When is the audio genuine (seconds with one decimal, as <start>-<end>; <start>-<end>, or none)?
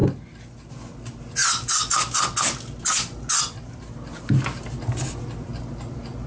0.0-6.3